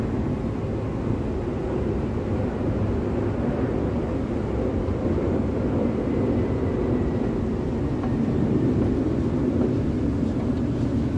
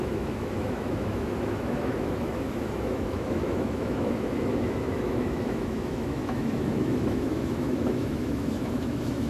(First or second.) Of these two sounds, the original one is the first